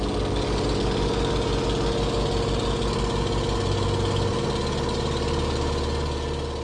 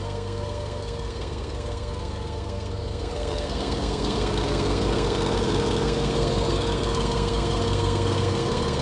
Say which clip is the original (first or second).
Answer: first